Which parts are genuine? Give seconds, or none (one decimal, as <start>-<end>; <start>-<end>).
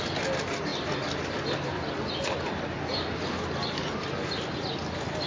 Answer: 0.0-5.3